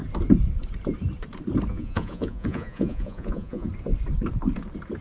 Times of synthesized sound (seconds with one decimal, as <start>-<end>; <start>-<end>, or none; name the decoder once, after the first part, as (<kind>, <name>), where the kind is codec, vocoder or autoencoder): 1.7-3.7 (vocoder, Vocos)